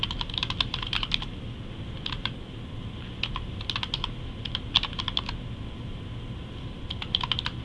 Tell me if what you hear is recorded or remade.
recorded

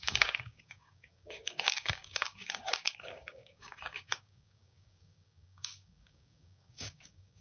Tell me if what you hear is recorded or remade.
remade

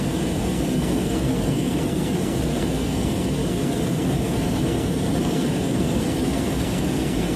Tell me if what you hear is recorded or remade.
remade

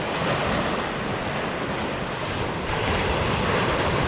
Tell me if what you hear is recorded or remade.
recorded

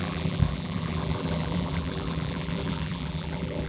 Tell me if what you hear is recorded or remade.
remade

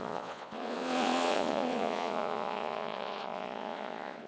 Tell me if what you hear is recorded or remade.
remade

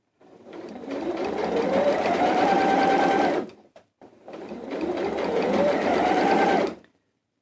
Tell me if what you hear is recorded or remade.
remade